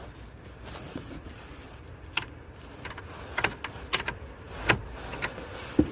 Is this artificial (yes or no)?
yes